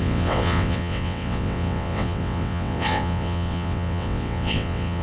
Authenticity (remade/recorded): remade